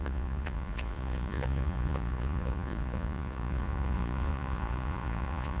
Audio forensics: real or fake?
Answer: fake